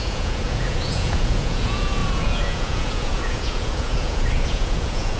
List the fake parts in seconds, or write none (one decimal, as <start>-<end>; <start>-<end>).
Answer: 0.0-5.2